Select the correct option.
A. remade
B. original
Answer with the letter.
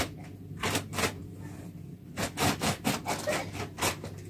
B